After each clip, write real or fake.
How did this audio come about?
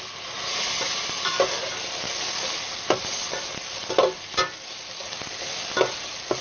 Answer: real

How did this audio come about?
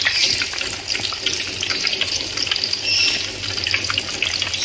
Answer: real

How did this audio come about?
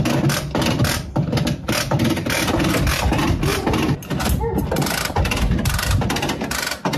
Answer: real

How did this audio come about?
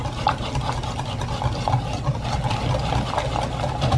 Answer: real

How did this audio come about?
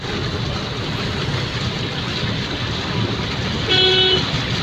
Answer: real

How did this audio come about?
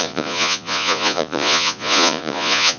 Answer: fake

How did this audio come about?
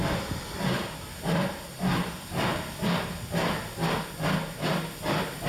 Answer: real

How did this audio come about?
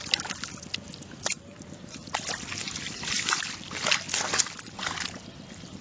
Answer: real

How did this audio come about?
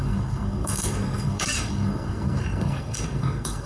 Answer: fake